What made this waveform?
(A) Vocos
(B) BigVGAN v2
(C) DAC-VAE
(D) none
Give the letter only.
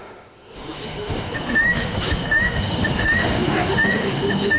C